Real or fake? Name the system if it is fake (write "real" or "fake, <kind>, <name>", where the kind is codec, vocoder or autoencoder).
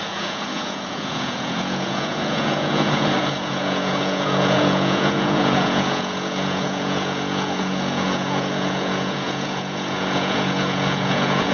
fake, vocoder, Vocos